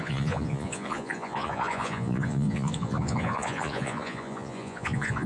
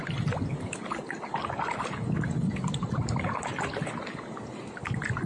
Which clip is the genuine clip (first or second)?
second